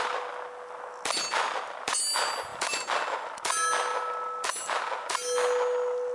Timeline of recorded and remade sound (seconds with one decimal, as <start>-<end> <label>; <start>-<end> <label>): 0.0-6.1 recorded